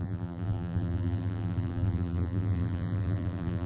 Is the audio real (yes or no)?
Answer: no